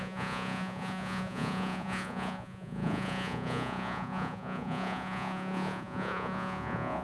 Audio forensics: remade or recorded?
remade